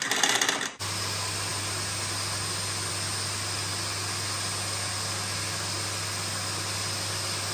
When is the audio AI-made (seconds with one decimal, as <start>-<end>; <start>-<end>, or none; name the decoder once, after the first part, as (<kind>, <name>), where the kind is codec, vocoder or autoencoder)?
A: none